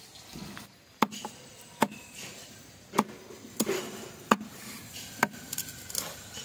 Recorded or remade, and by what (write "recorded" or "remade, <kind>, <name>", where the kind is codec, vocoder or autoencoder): recorded